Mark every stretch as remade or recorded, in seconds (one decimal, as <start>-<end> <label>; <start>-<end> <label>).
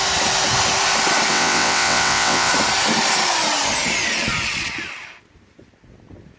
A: 0.0-1.3 recorded; 1.3-2.5 remade; 2.5-6.4 recorded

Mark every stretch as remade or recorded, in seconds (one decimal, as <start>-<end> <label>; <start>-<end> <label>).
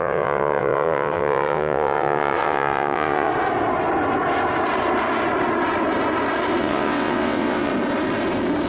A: 0.0-3.3 remade; 3.3-6.6 recorded; 6.6-7.7 remade; 7.7-8.7 recorded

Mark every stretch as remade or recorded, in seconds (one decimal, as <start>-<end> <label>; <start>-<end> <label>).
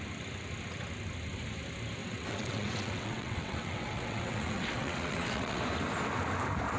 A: 0.0-2.0 recorded; 2.0-5.6 remade; 5.6-6.8 recorded